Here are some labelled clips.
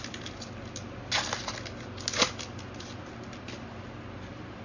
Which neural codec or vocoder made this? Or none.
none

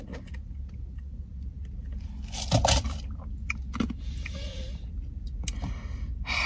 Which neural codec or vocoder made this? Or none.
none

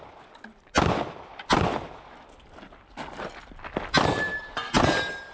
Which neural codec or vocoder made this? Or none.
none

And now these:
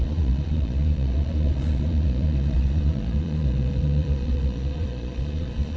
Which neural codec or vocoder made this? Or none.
vocoder, Vocos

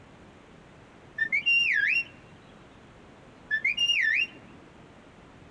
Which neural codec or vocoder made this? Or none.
none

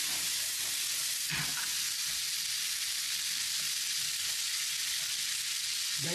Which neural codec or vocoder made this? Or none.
none